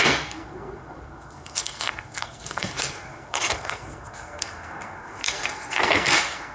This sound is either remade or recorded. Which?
remade